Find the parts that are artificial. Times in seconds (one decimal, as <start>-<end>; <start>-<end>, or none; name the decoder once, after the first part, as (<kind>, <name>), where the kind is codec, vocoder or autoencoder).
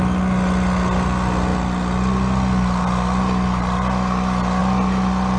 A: none